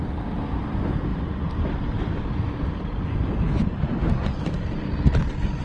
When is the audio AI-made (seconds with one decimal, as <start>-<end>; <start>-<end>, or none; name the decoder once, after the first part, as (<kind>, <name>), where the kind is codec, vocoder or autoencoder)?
1.1-4.5 (vocoder, BigVGAN v2)